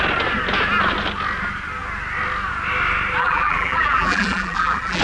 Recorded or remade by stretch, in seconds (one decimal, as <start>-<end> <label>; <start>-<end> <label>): 0.0-3.2 recorded; 3.2-5.0 remade